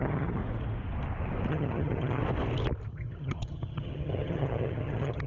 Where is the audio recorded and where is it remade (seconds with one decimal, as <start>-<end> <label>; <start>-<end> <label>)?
0.0-0.4 remade; 0.4-1.5 recorded; 1.5-2.2 remade; 2.2-2.9 recorded; 2.9-5.3 remade